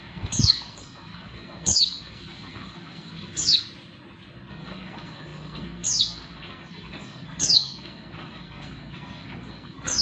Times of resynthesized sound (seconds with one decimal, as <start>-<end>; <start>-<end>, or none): 0.0-3.6; 4.5-10.0